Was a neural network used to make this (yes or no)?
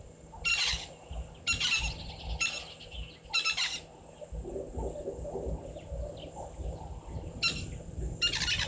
no